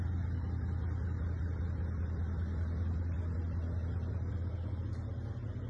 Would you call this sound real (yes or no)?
yes